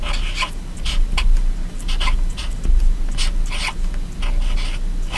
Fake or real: real